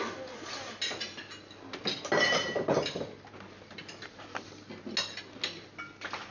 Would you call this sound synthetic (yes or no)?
no